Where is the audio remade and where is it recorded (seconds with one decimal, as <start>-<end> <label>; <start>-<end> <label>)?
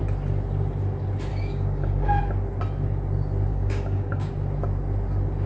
0.0-1.3 recorded; 1.3-2.2 remade; 2.2-3.5 recorded; 3.5-4.3 remade; 4.3-5.5 recorded